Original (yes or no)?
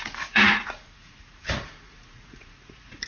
no